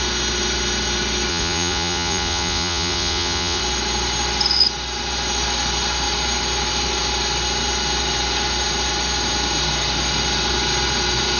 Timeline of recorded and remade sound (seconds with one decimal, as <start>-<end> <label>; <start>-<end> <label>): 0.0-1.3 recorded; 1.3-3.6 remade; 3.6-11.4 recorded